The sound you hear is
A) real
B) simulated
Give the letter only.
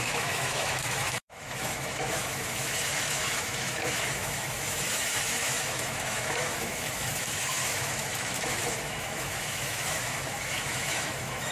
B